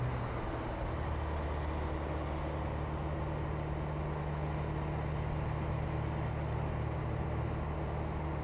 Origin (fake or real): real